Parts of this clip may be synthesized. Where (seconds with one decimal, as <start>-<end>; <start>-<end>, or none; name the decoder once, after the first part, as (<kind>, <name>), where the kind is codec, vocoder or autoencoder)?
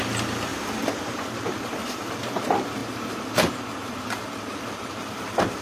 0.0-0.5 (vocoder, BigVGAN v2); 1.0-5.6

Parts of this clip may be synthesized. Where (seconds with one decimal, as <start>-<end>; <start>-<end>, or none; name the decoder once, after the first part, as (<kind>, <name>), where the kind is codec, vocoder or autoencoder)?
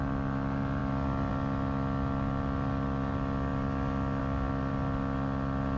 none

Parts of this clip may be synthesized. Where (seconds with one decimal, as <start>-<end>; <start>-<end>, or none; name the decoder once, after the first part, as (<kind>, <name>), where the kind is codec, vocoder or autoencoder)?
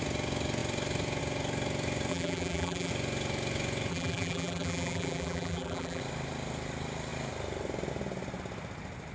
2.1-2.9 (vocoder, BigVGAN v2); 3.9-6.0